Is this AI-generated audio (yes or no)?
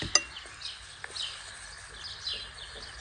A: no